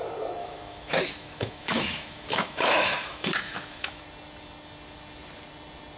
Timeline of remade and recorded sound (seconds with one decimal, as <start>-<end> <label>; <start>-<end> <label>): 0.0-0.4 recorded; 0.4-4.0 remade; 4.0-6.0 recorded